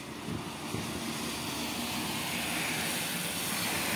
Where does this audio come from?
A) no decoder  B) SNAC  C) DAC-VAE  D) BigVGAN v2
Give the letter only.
A